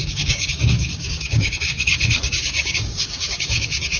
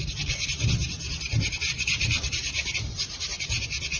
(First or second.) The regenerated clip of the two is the first